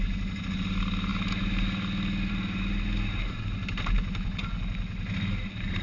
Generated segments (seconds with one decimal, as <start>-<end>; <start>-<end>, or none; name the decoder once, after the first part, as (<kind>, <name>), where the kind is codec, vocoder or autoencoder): none